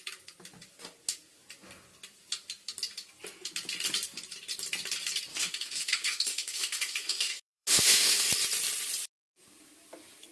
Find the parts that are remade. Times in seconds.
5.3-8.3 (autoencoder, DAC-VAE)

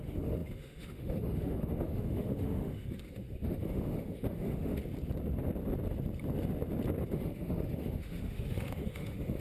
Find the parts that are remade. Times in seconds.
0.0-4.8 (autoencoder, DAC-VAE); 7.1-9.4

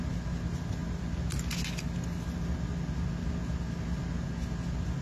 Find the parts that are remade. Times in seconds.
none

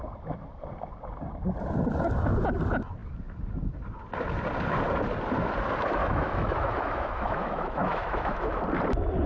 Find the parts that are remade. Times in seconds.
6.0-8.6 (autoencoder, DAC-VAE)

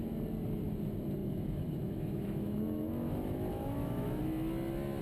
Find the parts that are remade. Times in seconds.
1.2-4.2 (autoencoder, DAC-VAE)